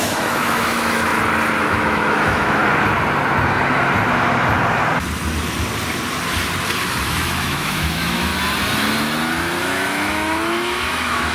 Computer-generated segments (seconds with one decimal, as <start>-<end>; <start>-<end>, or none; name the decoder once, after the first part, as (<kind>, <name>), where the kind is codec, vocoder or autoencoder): 0.0-1.1 (autoencoder, DAC-VAE); 1.6-2.6; 7.0-8.3; 9.6-11.3